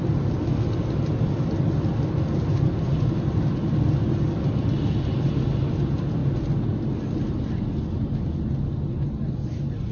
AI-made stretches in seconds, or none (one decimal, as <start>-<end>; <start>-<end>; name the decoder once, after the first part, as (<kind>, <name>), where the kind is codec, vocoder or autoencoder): none